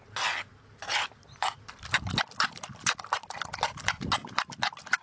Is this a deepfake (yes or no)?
no